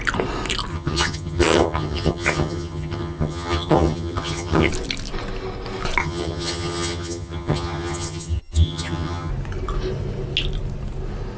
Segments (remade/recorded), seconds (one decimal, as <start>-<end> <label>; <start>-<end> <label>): 0.0-0.7 recorded; 0.7-4.7 remade; 4.7-6.0 recorded; 6.0-9.3 remade; 9.3-11.4 recorded